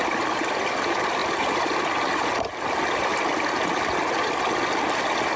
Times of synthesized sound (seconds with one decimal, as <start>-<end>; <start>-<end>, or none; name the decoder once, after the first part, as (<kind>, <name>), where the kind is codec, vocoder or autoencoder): none